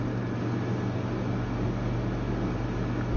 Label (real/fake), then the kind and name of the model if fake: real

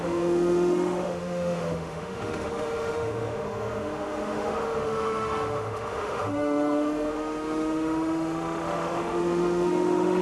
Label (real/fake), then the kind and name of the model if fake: fake, autoencoder, DAC-VAE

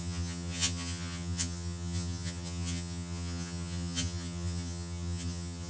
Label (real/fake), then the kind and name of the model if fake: fake, vocoder, HiFi-GAN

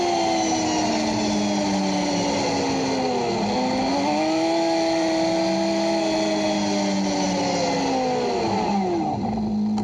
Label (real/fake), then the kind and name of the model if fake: real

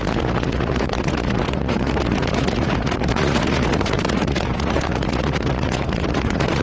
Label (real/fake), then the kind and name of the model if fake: fake, vocoder, Vocos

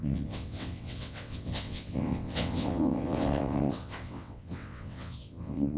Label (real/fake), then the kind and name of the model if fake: fake, vocoder, WaveNeXt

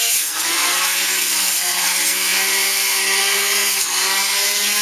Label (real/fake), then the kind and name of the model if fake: fake, codec, SNAC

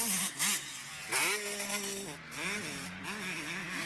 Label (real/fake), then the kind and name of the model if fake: real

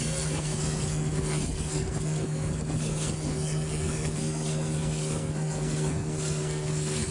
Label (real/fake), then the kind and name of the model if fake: fake, codec, SNAC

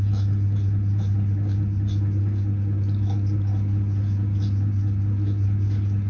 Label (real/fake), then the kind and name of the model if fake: real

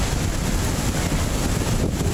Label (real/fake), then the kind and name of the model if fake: real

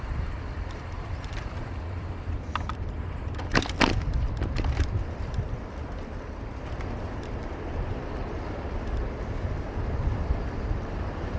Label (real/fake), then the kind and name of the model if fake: fake, vocoder, BigVGAN v2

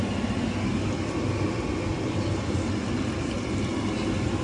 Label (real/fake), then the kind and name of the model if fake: real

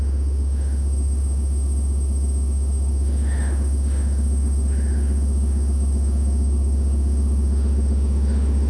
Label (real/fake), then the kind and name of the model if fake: fake, autoencoder, DAC-VAE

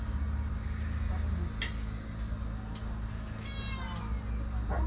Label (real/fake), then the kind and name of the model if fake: real